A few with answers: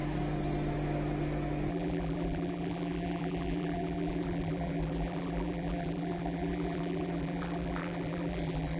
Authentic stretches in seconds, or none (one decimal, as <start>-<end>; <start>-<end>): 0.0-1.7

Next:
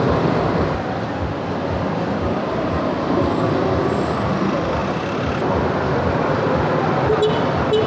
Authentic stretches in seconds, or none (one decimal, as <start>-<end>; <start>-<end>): 0.0-7.9

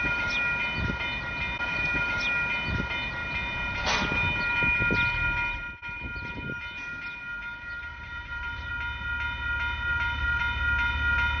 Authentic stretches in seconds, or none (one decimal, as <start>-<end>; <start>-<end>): 0.0-7.9; 8.7-9.9; 10.4-11.4